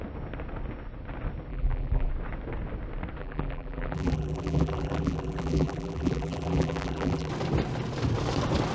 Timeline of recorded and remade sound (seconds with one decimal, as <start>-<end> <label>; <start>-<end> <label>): 0.0-1.5 recorded; 1.5-2.1 remade; 2.1-3.2 recorded; 3.2-7.3 remade; 7.3-8.7 recorded